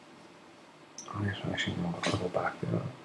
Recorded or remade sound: recorded